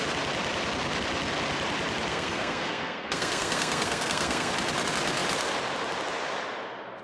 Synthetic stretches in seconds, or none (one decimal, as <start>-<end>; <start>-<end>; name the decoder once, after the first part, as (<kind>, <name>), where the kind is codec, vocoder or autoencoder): 2.1-4.5 (codec, SNAC)